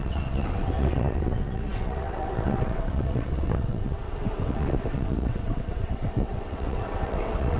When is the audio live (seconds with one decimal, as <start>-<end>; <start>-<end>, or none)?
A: none